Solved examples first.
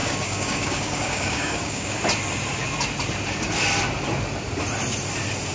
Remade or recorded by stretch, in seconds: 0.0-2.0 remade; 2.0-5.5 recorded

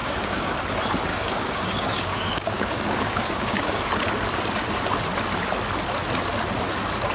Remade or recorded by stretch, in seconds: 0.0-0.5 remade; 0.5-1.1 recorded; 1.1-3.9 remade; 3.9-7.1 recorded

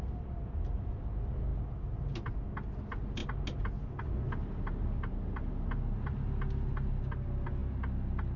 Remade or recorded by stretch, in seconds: 0.0-8.4 recorded

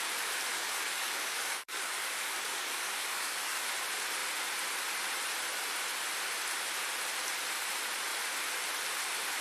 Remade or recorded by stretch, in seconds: 0.0-0.5 recorded; 0.5-3.7 remade; 3.7-9.4 recorded

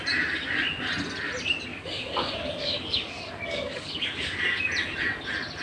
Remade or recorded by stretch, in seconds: 0.0-1.7 recorded; 1.7-4.7 remade; 4.7-5.6 recorded

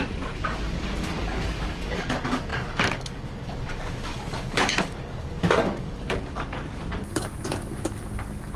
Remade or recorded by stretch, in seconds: 0.0-8.6 remade